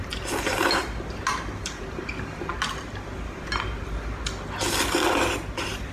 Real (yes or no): yes